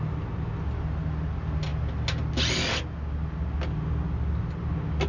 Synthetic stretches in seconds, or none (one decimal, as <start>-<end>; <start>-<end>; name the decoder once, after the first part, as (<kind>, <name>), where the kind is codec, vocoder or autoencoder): none